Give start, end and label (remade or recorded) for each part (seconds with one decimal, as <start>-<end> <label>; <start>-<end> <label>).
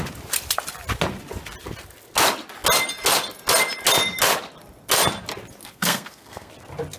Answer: 0.0-5.6 recorded; 5.6-6.5 remade; 6.5-7.0 recorded